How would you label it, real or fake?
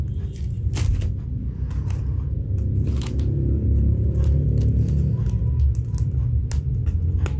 real